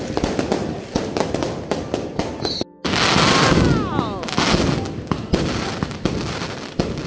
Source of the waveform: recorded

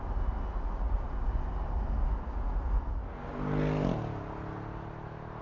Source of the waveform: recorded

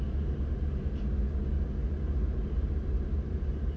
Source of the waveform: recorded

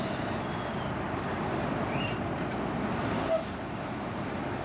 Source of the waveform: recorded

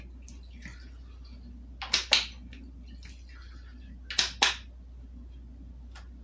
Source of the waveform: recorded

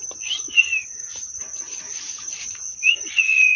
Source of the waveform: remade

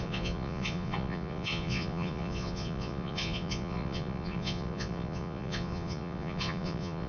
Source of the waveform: remade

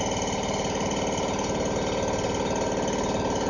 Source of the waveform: recorded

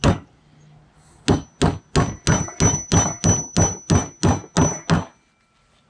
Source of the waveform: recorded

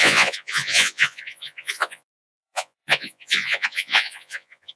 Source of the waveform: remade